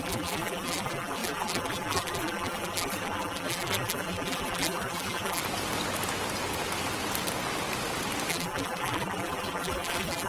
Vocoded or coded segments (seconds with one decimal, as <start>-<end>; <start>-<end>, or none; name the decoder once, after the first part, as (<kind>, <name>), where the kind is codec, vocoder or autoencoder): 0.0-5.4 (vocoder, BigVGAN v2); 8.3-10.3